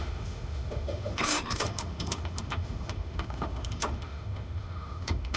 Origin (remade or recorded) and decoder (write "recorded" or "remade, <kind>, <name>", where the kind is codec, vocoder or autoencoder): remade, autoencoder, DAC-VAE